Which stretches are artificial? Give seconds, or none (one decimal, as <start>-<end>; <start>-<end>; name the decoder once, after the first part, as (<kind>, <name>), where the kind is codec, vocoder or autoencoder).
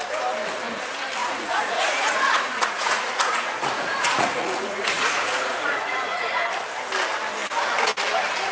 1.2-6.3 (vocoder, Vocos)